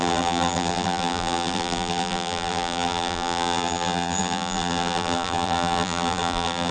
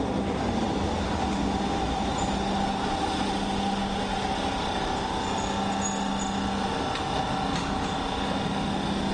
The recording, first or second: second